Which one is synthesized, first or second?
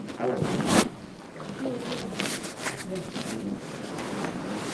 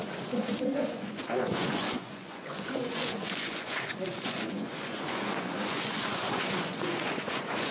second